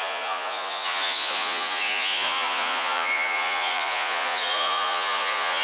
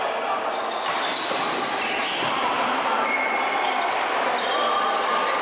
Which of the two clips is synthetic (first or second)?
first